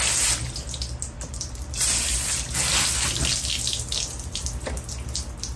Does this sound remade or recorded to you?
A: recorded